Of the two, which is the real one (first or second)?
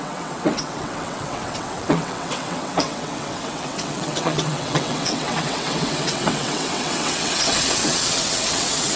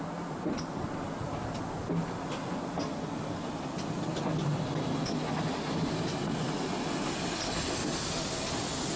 second